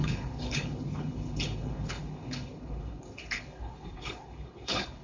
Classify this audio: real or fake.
fake